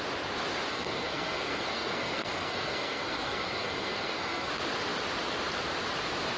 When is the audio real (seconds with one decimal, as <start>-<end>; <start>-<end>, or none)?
0.0-0.7; 4.5-6.4